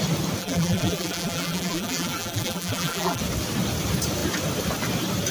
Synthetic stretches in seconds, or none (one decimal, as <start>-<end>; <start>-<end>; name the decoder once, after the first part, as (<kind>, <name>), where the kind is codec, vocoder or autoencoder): 0.4-3.2 (vocoder, BigVGAN v2)